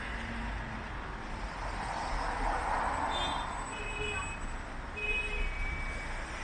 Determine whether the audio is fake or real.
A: real